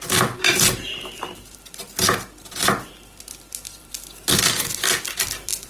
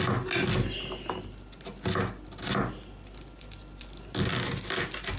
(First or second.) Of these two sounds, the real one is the second